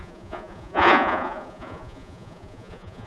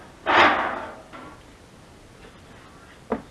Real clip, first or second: second